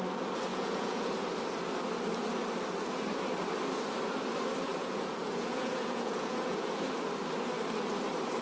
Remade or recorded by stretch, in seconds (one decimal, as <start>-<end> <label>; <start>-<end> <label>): 0.0-0.5 recorded; 0.5-1.1 remade; 1.1-4.7 recorded; 4.7-7.0 remade; 7.0-8.4 recorded